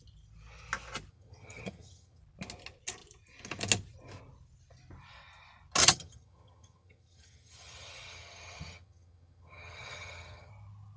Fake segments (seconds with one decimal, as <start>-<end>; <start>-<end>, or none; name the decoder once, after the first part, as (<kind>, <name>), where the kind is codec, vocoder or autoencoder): 1.1-2.2 (vocoder, HiFi-GAN); 5.8-10.5